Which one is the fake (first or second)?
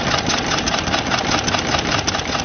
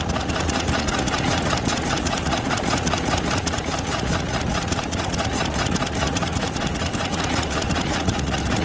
second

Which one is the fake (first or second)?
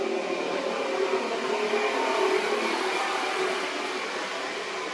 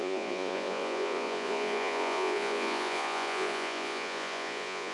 second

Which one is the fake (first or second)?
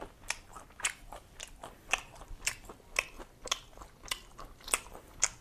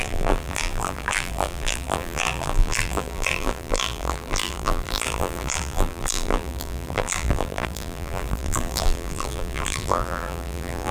second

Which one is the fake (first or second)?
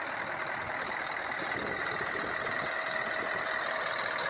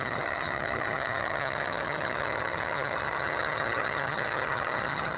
second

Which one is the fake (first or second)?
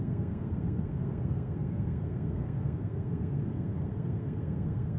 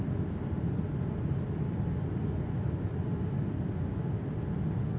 first